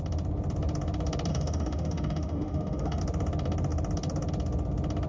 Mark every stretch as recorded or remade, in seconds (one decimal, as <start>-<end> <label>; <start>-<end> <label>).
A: 0.0-1.3 recorded; 1.3-3.0 remade; 3.0-5.1 recorded